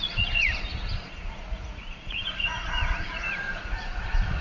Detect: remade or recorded remade